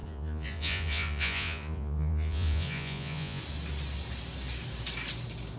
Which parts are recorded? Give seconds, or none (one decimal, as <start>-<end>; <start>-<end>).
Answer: 3.4-5.6